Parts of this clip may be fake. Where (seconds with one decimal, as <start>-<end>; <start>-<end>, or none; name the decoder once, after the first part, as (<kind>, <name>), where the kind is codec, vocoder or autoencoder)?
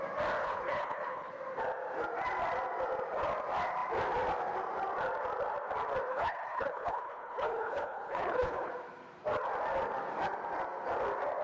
0.4-1.3 (codec, HILCodec); 6.1-8.7